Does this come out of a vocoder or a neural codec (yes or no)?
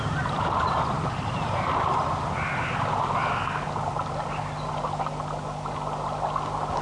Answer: no